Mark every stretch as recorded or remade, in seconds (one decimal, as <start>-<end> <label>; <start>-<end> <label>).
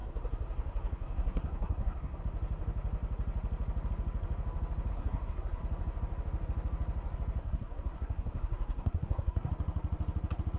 0.0-2.2 remade; 2.2-4.9 recorded; 4.9-5.6 remade; 5.6-7.4 recorded; 7.4-9.5 remade; 9.5-10.6 recorded